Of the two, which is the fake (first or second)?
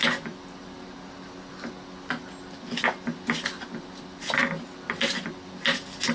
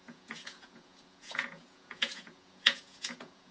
second